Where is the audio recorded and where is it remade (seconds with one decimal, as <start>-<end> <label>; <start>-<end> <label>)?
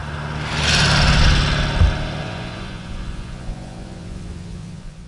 0.0-2.2 recorded; 2.2-5.1 remade